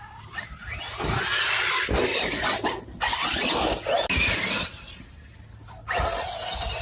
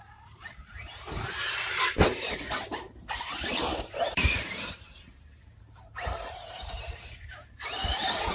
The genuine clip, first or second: first